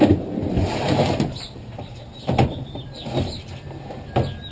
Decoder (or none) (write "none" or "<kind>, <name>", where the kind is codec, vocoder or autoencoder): vocoder, BigVGAN v2